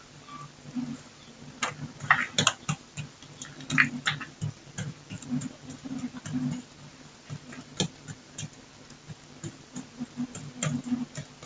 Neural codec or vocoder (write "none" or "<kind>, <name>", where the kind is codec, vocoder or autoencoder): none